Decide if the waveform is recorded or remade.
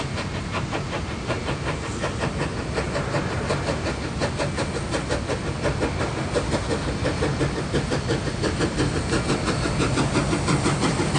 recorded